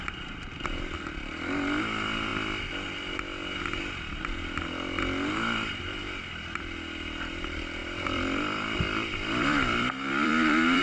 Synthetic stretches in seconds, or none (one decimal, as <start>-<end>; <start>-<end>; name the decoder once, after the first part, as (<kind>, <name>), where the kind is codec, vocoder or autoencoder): 7.8-10.8 (vocoder, BigVGAN v2)